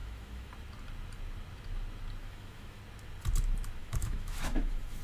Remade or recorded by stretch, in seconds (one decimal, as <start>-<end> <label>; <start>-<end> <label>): 0.0-0.5 remade; 0.5-2.2 recorded; 2.2-2.8 remade; 2.8-3.8 recorded; 3.8-5.0 remade